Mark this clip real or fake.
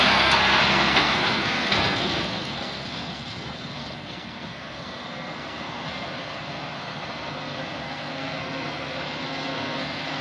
fake